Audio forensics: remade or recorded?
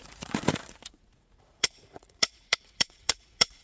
remade